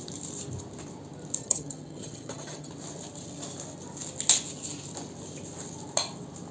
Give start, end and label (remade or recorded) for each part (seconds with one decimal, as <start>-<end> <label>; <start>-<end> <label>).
0.0-1.4 recorded; 1.4-2.7 remade; 2.7-6.5 recorded